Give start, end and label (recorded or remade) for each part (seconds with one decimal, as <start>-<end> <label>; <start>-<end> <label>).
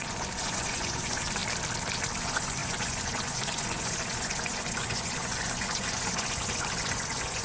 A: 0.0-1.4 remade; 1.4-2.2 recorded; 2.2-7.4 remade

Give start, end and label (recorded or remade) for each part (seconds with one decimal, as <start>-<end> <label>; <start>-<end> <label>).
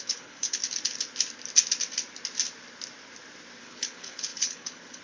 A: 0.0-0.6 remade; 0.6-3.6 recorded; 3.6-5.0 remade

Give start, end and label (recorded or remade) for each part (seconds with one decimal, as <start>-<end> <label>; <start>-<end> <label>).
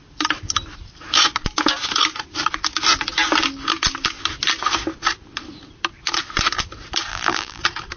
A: 0.0-7.1 recorded; 7.1-7.6 remade; 7.6-8.0 recorded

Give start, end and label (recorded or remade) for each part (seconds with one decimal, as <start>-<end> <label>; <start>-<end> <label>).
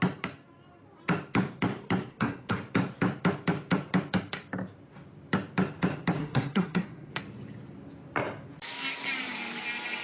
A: 0.0-2.1 recorded; 2.1-2.6 remade; 2.6-6.2 recorded; 6.2-7.1 remade; 7.1-10.0 recorded